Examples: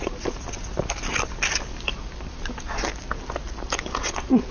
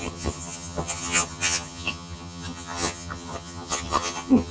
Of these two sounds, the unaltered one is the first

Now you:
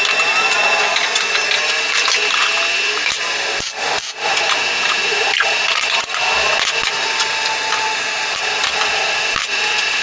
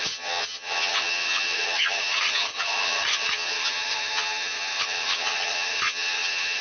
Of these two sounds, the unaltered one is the first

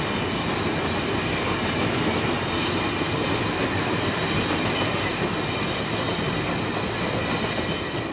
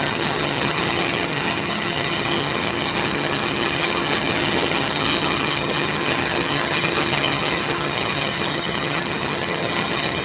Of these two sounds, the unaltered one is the first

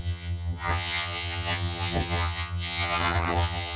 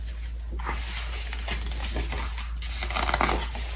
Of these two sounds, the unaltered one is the second